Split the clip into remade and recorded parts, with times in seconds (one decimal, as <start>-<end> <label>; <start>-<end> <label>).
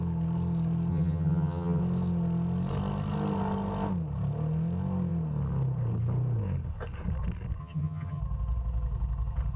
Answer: 0.0-0.9 recorded; 0.9-1.8 remade; 1.8-7.6 recorded; 7.6-8.2 remade; 8.2-9.6 recorded